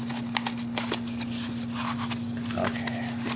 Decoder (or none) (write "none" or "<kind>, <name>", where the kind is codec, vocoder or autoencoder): none